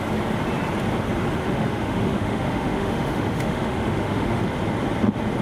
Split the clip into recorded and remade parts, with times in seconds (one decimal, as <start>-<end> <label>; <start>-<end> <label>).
0.0-1.4 recorded; 1.4-4.4 remade; 4.4-5.4 recorded